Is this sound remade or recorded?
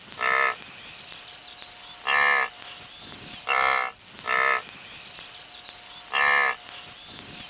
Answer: recorded